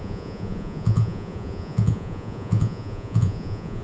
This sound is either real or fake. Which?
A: fake